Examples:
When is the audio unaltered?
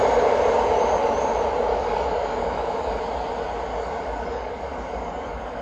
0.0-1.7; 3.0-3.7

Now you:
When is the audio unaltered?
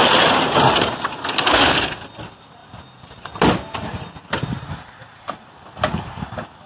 0.0-6.7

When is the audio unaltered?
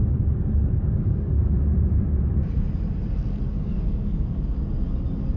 0.0-0.6; 1.5-3.5; 4.6-5.4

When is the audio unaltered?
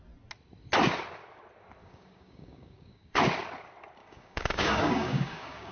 0.0-1.8; 3.2-4.0